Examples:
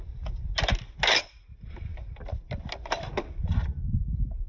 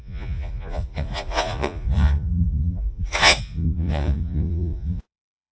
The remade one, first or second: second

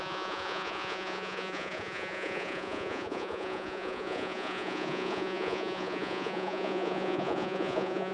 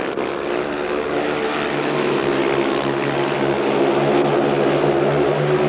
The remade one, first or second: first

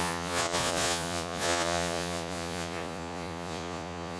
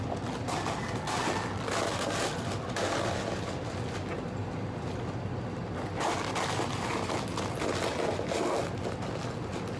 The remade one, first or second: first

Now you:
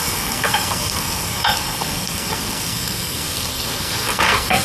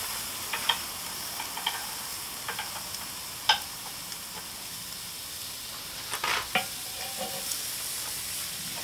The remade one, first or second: first